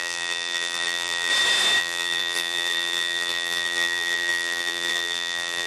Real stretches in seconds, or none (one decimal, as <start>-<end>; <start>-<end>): 1.3-1.8